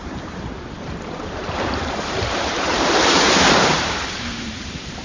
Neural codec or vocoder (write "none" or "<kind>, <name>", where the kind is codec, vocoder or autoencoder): vocoder, BigVGAN v2